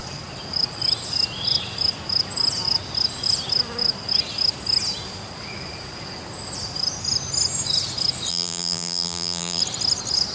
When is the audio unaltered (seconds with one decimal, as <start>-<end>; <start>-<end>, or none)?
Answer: 0.0-8.3; 9.6-10.3